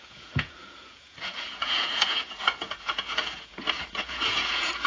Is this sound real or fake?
fake